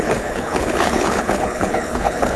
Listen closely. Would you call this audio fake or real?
fake